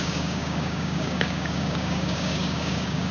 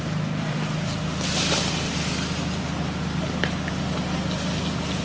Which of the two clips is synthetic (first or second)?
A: first